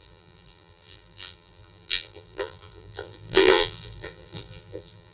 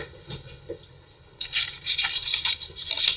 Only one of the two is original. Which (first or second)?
second